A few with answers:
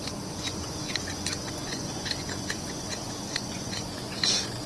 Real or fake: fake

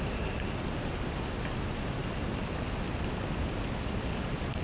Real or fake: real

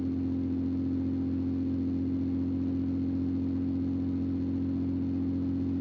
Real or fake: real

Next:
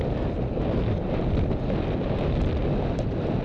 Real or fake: real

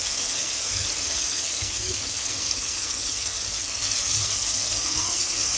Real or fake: fake